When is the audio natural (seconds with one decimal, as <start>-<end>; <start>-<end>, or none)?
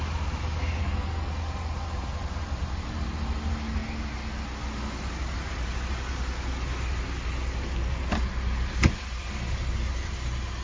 0.0-0.8; 1.3-10.6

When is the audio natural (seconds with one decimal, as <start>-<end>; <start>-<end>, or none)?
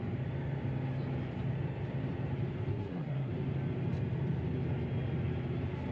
0.0-2.7; 3.3-5.9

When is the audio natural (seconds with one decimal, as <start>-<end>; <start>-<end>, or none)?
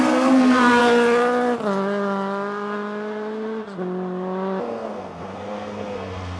0.8-4.6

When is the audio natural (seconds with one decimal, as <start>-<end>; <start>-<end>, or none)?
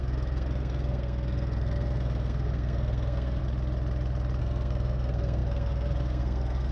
3.4-4.4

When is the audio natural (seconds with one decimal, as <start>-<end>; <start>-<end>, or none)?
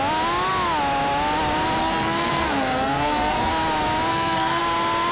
0.0-1.8; 3.5-4.1; 4.6-5.1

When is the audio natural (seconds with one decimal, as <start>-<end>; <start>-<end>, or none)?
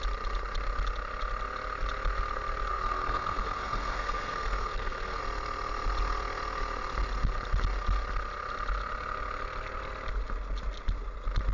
0.0-2.7; 5.2-11.5